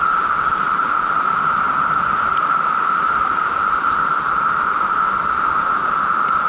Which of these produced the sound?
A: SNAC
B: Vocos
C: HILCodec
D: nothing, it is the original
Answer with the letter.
D